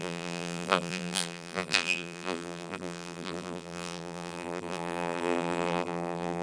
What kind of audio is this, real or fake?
fake